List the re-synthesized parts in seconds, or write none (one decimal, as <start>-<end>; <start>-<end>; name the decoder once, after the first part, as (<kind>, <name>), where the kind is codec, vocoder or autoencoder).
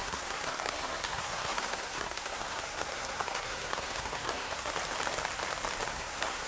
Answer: 0.0-4.7 (codec, SNAC); 5.9-6.5